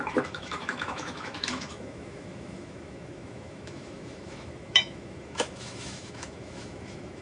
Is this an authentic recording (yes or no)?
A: no